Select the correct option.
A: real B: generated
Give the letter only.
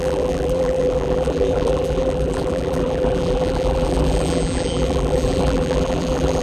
B